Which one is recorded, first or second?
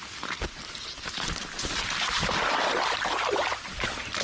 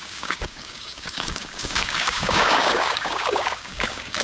first